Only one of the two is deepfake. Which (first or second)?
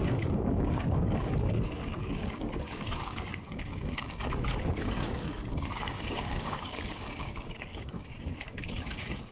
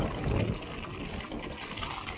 first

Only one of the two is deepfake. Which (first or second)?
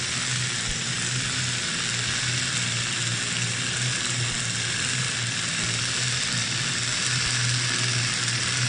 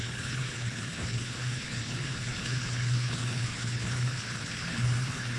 second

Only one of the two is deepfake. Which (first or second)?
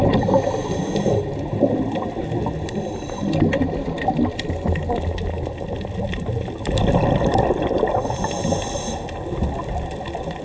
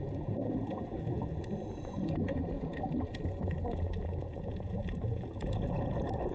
second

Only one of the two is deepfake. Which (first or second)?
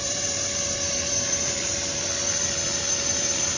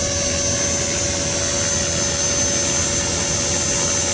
first